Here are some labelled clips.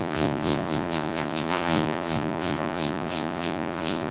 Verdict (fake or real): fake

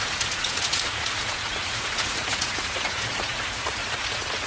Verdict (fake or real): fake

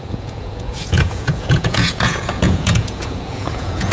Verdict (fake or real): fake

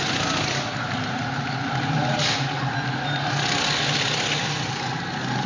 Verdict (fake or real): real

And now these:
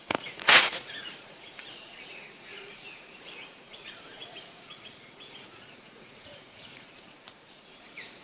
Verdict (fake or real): fake